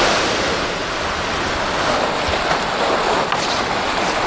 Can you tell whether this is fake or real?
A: real